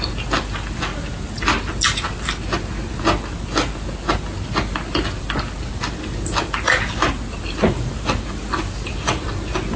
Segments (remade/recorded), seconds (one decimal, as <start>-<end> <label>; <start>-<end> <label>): 0.0-0.9 remade; 0.9-5.2 recorded; 5.2-9.8 remade